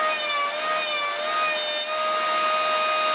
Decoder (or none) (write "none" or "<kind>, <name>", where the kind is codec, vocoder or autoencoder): none